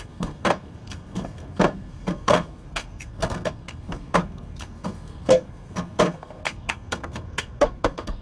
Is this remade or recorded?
remade